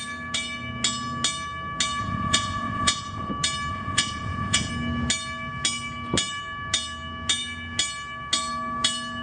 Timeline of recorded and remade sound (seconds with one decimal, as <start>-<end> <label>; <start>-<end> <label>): 0.0-2.0 recorded; 2.0-3.3 remade; 3.3-3.7 recorded; 3.7-4.7 remade; 4.7-9.2 recorded